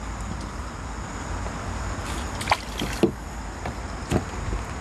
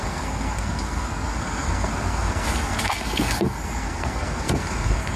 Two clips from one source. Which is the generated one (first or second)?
second